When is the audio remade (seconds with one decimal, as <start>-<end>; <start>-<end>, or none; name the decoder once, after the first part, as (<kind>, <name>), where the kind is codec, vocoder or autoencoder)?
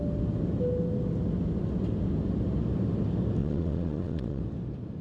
3.4-4.4 (vocoder, Vocos)